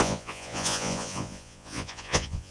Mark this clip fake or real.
fake